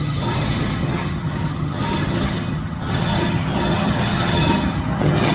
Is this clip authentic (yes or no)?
no